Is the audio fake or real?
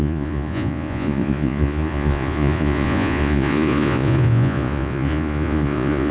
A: fake